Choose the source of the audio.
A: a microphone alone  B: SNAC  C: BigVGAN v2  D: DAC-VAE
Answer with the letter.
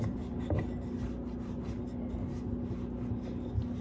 A